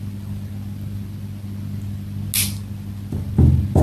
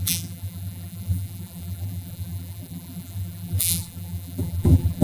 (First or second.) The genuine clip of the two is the first